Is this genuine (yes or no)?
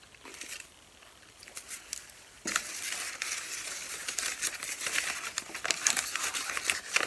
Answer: no